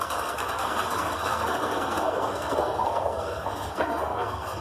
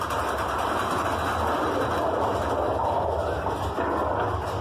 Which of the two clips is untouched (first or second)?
second